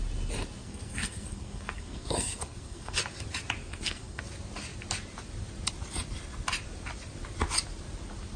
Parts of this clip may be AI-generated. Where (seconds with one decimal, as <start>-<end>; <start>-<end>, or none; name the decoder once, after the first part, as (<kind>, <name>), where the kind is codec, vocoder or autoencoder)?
0.6-3.0 (codec, SNAC); 3.6-4.2